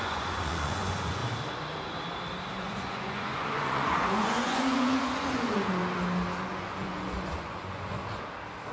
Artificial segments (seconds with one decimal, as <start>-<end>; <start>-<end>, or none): 0.0-1.2; 2.5-5.8; 6.4-8.0